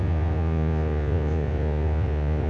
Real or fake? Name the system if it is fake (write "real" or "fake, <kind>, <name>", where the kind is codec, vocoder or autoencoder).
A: fake, vocoder, Vocos